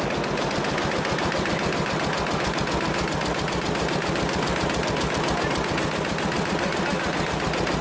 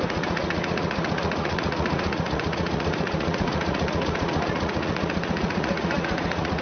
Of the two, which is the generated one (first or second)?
second